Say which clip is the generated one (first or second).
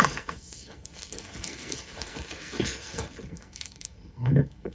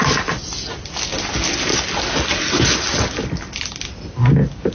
first